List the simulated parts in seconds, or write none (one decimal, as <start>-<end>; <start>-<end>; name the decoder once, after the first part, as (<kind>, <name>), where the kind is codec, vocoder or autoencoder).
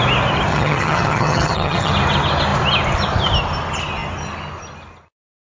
0.5-1.9 (vocoder, HiFi-GAN)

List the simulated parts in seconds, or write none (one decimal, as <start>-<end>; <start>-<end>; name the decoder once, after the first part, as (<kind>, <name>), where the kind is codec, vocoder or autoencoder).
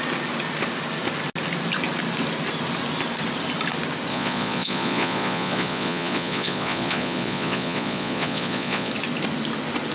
4.1-8.9 (vocoder, Vocos)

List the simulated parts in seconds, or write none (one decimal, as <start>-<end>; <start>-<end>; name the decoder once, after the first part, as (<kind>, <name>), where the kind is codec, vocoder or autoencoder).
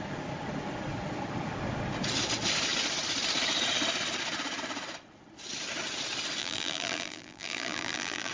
6.4-8.3 (vocoder, BigVGAN v2)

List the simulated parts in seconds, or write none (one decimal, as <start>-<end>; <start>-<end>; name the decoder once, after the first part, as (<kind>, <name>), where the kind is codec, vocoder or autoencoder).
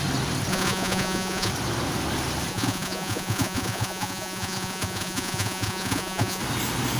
0.5-1.5 (vocoder, Vocos); 2.5-6.4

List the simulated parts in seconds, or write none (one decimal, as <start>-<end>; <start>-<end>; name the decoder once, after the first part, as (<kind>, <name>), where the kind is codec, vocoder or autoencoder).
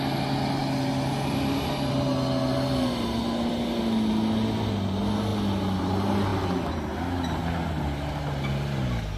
none